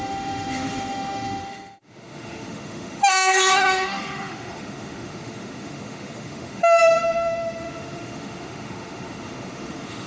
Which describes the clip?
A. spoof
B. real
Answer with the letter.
A